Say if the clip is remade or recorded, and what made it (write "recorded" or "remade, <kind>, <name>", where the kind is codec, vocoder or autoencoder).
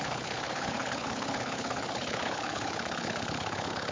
remade, codec, HILCodec